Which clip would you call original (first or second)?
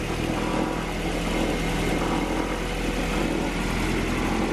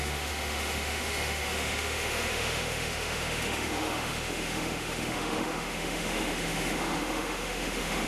first